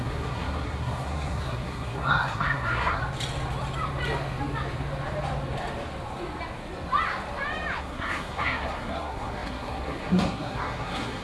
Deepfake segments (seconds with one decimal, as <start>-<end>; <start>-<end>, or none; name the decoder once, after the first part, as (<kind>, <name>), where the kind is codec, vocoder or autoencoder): 0.0-3.0 (codec, SNAC); 7.8-11.2

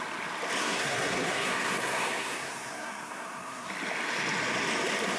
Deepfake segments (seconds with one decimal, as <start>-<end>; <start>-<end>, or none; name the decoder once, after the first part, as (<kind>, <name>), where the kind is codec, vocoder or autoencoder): 0.6-3.7 (codec, SNAC)

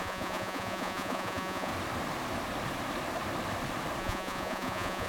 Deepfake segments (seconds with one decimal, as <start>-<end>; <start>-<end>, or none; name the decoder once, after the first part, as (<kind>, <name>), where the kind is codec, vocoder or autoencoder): 0.0-1.7 (vocoder, Vocos); 4.0-5.1

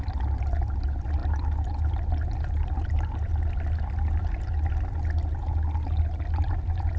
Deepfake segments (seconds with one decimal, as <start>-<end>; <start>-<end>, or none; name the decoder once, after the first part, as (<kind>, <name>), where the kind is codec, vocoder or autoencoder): none

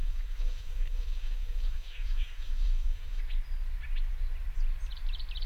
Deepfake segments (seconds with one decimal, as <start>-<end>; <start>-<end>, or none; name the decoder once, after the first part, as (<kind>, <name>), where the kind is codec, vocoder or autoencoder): 0.0-3.2 (codec, DAC)

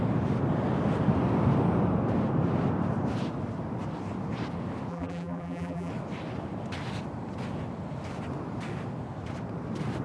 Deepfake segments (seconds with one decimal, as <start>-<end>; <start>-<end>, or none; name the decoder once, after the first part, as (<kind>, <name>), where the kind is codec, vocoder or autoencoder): 4.9-5.9 (vocoder, BigVGAN v2)